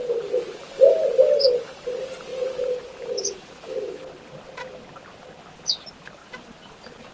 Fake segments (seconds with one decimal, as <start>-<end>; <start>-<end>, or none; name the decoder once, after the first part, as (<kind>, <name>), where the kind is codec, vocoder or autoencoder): none